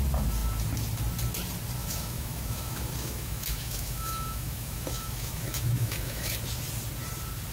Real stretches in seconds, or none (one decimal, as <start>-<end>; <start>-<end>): 0.0-1.8; 6.3-7.5